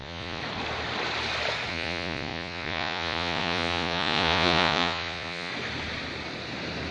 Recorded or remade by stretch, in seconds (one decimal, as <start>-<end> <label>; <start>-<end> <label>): 0.0-0.4 remade; 0.4-1.7 recorded; 1.7-5.5 remade; 5.5-6.9 recorded